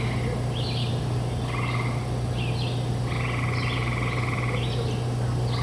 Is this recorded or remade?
recorded